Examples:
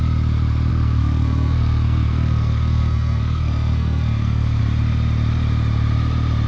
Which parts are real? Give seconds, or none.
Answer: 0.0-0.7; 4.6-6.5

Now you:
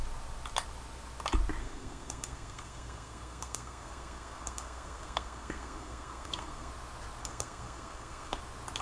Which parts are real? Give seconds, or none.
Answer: 0.0-1.6; 6.7-7.2; 8.4-8.8